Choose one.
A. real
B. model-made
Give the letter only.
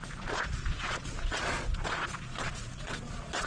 B